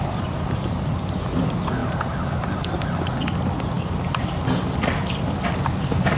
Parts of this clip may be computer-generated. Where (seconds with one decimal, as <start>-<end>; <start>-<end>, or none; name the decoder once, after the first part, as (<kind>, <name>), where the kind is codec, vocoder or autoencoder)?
none